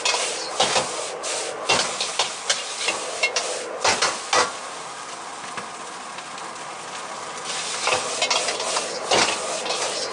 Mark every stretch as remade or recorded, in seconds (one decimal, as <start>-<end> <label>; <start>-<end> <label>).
0.0-10.1 recorded